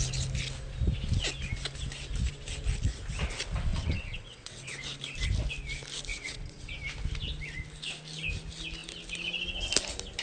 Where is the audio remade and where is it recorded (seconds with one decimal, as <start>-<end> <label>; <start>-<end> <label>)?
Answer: 0.0-3.7 recorded; 3.7-4.7 remade; 4.7-6.1 recorded; 6.1-6.7 remade; 6.7-10.2 recorded